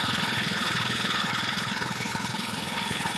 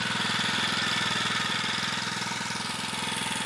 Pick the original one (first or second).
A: second